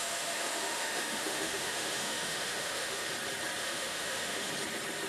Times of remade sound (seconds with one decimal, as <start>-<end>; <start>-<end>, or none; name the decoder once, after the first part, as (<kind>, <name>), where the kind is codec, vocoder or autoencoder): 0.0-3.1 (autoencoder, DAC-VAE); 3.6-4.5